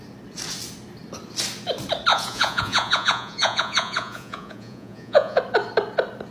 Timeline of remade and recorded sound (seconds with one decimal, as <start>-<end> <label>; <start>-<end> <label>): 0.0-2.1 recorded; 2.1-5.4 remade; 5.4-6.3 recorded